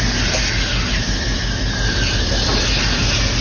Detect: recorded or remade recorded